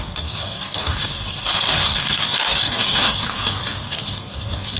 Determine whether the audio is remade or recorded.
remade